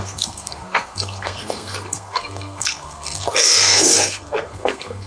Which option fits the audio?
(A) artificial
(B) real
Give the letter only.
A